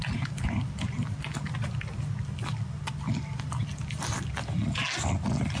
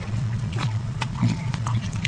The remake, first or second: second